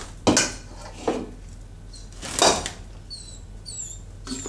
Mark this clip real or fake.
real